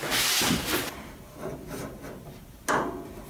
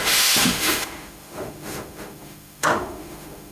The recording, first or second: first